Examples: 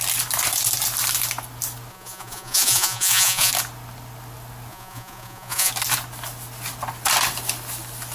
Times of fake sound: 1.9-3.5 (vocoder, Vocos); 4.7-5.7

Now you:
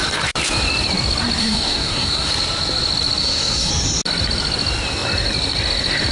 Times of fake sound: 1.4-2.3 (codec, SNAC); 3.2-3.7

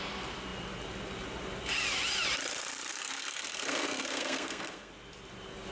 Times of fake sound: 2.9-4.9 (codec, SNAC)

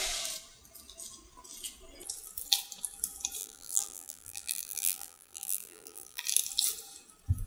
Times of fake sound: 3.4-6.2 (vocoder, BigVGAN v2)

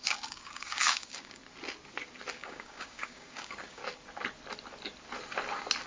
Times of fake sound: 0.0-1.4 (codec, DAC); 2.3-3.8

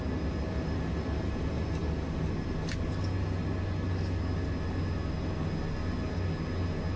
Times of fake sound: none

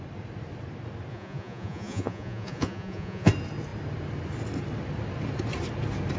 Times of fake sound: 1.1-3.3 (vocoder, Vocos)